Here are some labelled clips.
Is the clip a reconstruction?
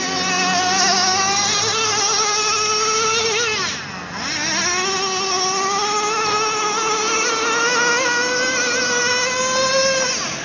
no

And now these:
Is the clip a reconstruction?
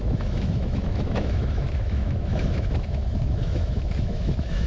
yes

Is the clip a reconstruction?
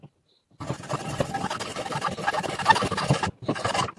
no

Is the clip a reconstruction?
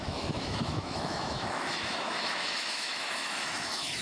yes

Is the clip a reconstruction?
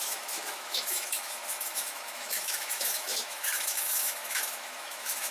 yes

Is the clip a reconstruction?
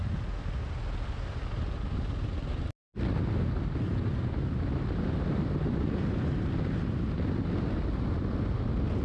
no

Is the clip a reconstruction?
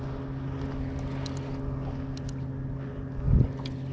no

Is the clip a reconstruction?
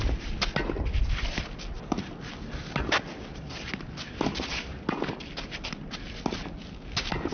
no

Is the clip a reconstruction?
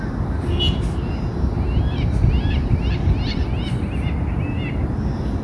no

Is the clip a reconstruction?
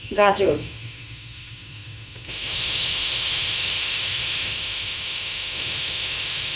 yes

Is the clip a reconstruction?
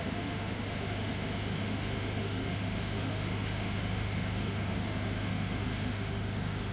yes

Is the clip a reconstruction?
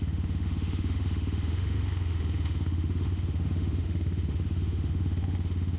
yes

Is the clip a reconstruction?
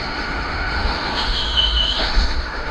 yes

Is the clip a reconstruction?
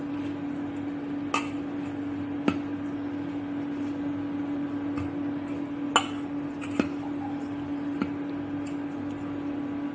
no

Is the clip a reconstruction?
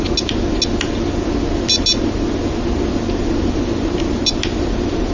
no